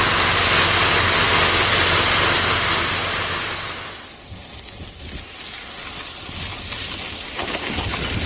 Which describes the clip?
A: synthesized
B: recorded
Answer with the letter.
B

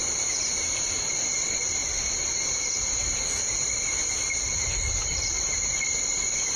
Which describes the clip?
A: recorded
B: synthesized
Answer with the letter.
A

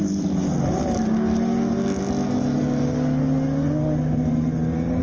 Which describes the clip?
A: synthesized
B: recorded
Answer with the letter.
B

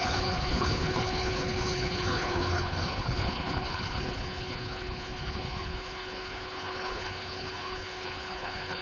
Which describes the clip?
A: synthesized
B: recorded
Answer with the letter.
A